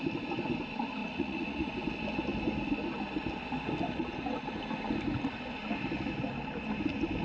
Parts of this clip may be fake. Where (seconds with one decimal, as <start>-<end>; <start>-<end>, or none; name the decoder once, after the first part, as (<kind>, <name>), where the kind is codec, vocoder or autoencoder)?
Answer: 1.0-1.7 (vocoder, Vocos)